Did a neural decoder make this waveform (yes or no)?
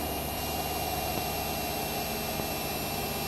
no